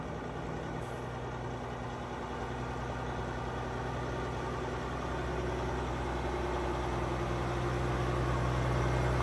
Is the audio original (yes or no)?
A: yes